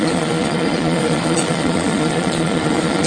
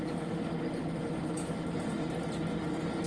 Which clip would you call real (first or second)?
second